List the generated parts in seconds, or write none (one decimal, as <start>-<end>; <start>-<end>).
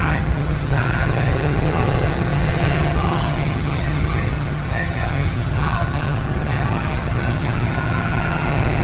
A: 0.0-8.8